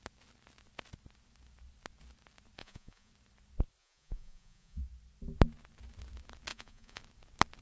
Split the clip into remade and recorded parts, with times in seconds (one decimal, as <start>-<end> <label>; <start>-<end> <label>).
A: 0.0-2.6 recorded; 2.6-3.1 remade; 3.1-3.8 recorded; 3.8-4.8 remade; 4.8-6.5 recorded; 6.5-7.0 remade; 7.0-7.6 recorded